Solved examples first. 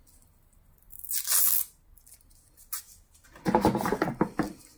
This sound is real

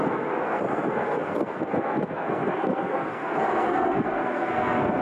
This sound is fake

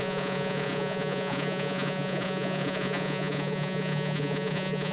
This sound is fake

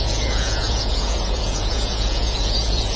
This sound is fake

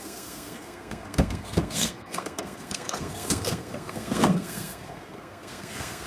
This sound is fake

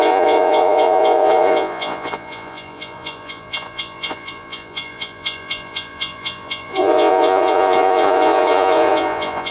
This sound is fake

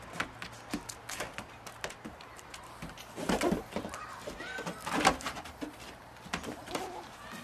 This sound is real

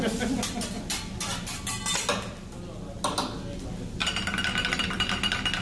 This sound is real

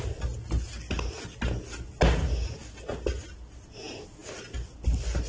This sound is real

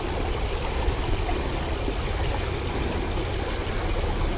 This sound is real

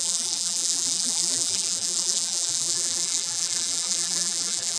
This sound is fake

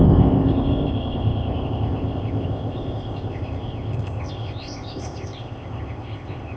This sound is fake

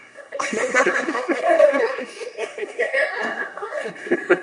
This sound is fake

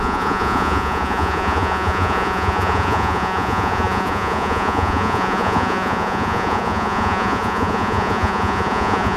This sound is fake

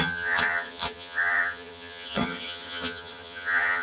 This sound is fake